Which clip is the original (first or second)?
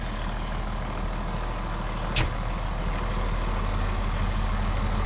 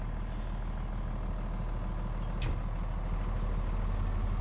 second